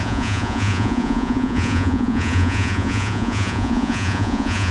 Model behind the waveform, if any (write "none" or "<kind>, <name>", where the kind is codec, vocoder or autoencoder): vocoder, Vocos